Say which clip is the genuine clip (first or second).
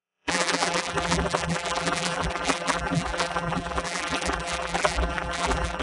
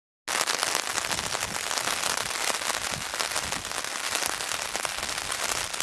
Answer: second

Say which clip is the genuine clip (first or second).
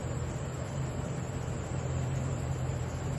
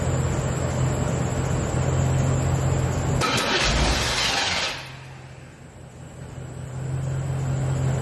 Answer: second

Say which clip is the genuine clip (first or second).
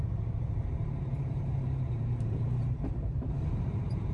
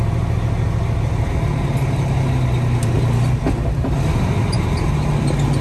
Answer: second